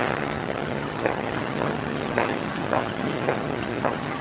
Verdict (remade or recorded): remade